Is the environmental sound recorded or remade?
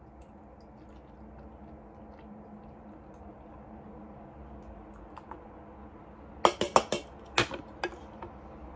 recorded